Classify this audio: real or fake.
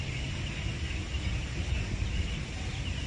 real